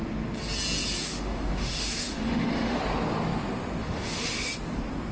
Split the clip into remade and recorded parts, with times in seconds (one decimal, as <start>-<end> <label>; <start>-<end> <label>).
0.0-1.0 recorded; 1.0-2.8 remade; 2.8-3.8 recorded; 3.8-4.5 remade; 4.5-5.1 recorded